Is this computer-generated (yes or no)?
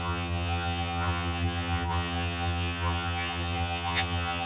yes